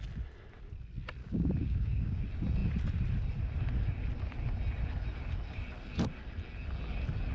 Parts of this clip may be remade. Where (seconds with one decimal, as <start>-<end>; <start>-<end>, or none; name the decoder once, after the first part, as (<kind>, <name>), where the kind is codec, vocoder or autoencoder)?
1.2-2.2 (codec, DAC)